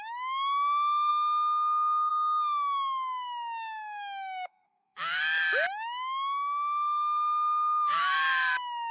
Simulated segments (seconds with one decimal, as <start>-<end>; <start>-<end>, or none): 0.0-1.1; 2.1-8.9